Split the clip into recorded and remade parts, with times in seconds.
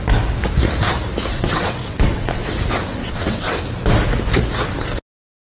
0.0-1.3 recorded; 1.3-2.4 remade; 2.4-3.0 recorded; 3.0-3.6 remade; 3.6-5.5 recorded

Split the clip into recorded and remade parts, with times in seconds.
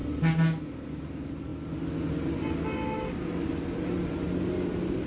0.0-5.1 recorded